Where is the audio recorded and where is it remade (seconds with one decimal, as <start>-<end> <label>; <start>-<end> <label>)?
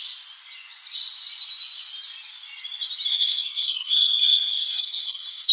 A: 0.0-3.1 recorded; 3.1-5.5 remade